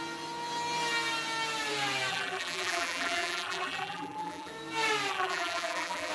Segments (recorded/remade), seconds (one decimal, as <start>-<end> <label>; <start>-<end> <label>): 0.0-2.1 recorded; 2.1-4.5 remade; 4.5-5.1 recorded; 5.1-6.1 remade